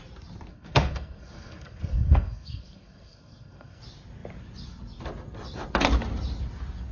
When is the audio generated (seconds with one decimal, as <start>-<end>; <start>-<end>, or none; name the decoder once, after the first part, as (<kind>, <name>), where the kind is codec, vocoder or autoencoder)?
0.5-3.8 (codec, SNAC)

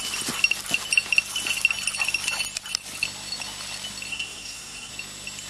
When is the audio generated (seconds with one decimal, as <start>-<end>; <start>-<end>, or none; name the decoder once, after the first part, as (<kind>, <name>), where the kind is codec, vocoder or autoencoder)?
4.1-4.9 (codec, SNAC)

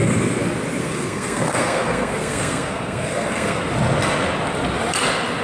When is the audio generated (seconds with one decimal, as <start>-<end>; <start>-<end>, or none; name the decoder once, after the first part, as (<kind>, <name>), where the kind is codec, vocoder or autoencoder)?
0.8-3.6 (codec, SNAC)

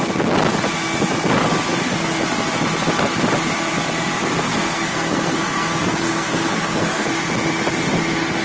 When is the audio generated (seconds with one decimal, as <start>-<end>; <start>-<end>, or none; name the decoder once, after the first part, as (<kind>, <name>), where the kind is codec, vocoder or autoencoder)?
4.5-7.1 (codec, SNAC)

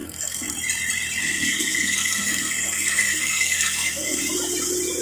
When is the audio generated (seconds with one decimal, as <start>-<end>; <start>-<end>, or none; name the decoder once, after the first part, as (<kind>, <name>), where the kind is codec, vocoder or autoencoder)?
0.0-0.5 (codec, SNAC); 1.2-4.2

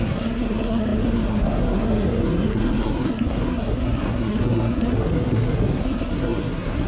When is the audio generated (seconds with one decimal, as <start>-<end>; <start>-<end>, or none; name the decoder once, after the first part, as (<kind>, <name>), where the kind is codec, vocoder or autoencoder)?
0.0-6.9 (codec, SNAC)